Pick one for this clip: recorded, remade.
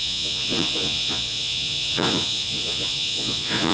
remade